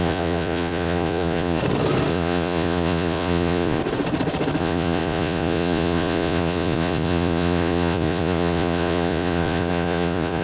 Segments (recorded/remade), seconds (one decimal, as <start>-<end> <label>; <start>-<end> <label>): 0.0-1.6 remade; 1.6-2.1 recorded; 2.1-3.8 remade; 3.8-4.6 recorded; 4.6-10.4 remade